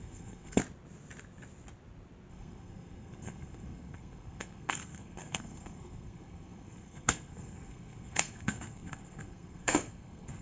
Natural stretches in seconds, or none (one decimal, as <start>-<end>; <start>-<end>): 0.6-2.3